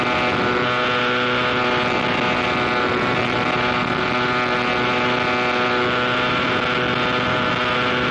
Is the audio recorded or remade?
recorded